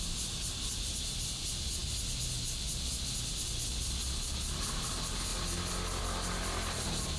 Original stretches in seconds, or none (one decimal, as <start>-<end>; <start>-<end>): 0.0-7.2